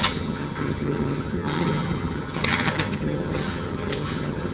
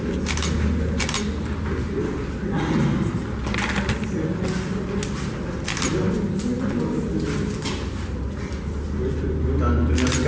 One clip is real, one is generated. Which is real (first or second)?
second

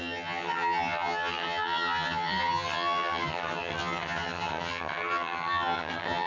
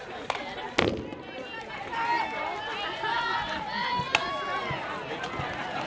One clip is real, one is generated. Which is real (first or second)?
second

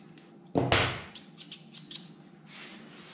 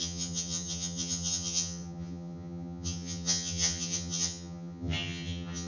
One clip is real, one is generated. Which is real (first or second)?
first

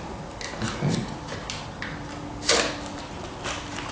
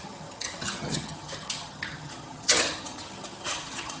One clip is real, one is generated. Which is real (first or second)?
first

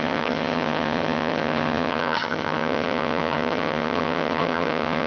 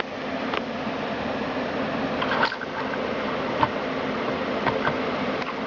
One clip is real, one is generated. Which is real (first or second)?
second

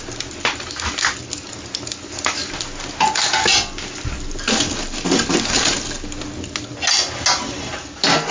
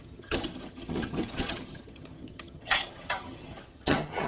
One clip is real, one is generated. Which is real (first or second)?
first